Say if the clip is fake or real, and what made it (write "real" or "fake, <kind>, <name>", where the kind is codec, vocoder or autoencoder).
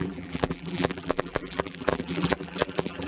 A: fake, vocoder, BigVGAN v2